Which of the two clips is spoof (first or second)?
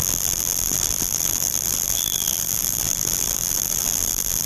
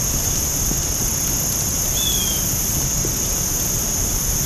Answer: first